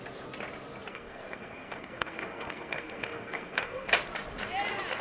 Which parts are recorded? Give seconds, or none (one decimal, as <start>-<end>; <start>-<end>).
0.0-0.9; 3.9-5.0